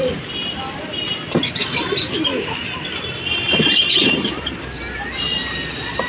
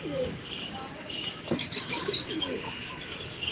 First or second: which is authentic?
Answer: first